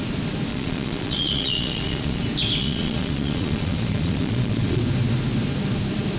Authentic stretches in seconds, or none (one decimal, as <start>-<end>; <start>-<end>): 0.0-0.5; 2.2-2.6; 4.8-6.2